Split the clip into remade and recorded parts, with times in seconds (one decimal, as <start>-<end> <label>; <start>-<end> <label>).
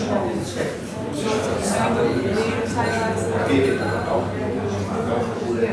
0.0-5.7 recorded